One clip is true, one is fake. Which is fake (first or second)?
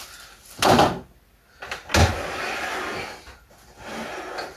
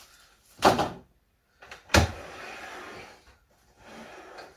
second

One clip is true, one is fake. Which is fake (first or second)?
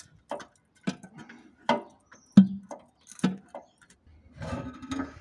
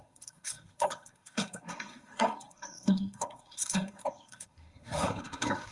second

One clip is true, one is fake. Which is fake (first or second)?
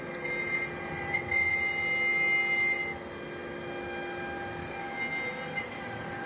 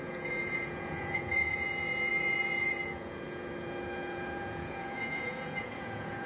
second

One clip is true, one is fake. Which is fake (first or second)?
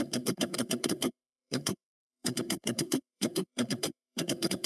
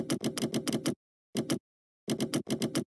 first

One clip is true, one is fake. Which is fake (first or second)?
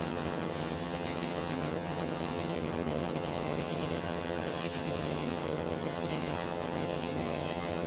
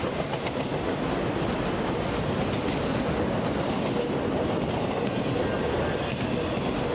first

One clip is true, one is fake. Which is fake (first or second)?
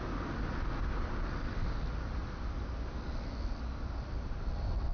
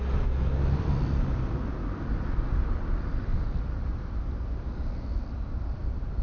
second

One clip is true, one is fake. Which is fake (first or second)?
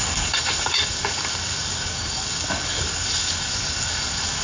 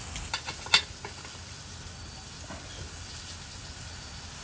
first